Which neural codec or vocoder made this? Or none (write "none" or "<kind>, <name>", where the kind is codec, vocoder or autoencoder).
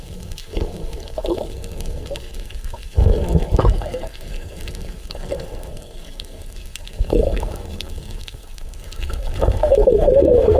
codec, SNAC